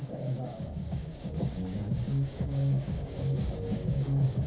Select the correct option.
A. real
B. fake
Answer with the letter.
B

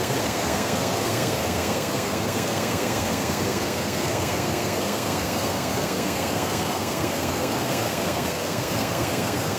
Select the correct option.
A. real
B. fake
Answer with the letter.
B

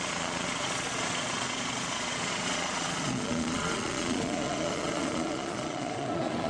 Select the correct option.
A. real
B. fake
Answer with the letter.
B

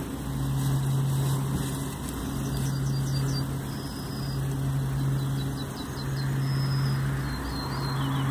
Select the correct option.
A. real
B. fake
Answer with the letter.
A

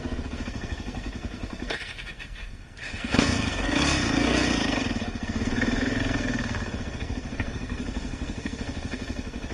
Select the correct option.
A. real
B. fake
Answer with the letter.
B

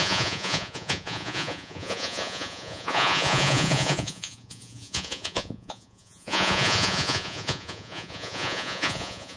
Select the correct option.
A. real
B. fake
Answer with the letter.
B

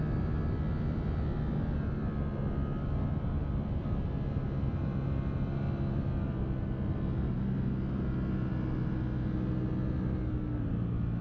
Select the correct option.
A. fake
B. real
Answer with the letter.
B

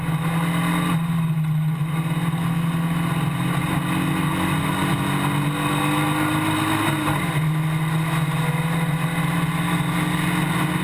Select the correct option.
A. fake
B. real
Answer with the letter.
B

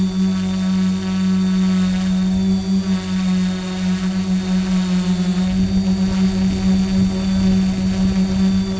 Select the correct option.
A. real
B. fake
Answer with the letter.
A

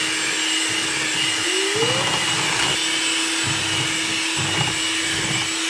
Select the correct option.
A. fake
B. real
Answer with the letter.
B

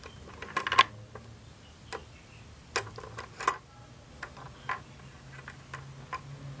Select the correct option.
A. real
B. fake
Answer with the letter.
A